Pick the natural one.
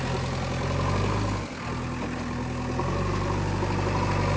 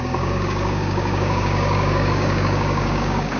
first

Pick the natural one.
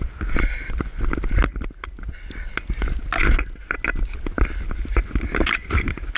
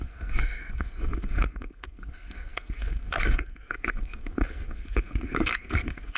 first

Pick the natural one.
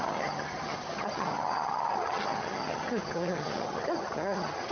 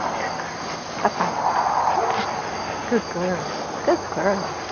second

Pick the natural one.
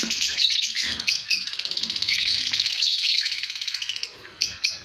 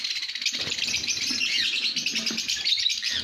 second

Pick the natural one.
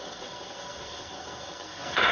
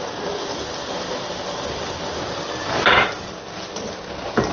second